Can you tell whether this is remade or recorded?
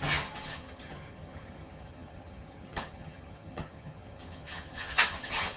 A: remade